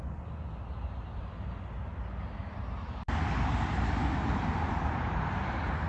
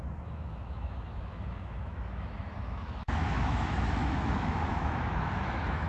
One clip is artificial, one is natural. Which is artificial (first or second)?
second